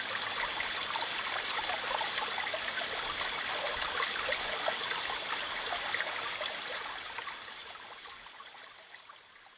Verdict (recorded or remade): recorded